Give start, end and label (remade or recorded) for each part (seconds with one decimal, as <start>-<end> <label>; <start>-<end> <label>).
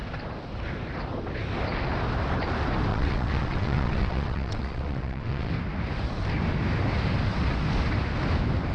0.0-2.9 recorded; 2.9-5.5 remade; 5.5-8.7 recorded